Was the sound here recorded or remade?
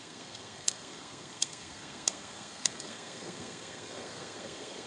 remade